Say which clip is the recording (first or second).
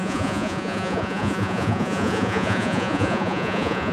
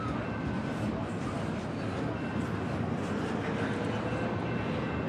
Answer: second